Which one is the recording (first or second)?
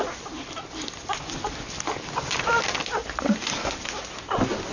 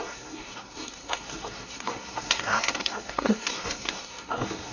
first